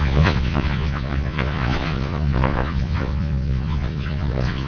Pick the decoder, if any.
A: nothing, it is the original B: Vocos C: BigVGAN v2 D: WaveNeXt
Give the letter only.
B